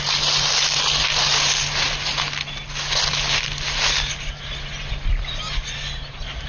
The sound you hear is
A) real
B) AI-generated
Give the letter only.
A